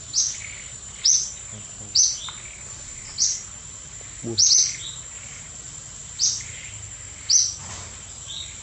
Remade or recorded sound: recorded